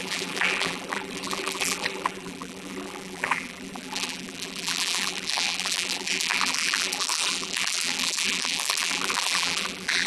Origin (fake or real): fake